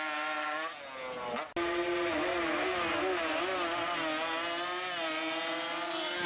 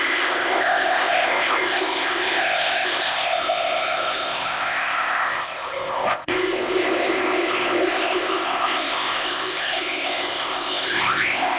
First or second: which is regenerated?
second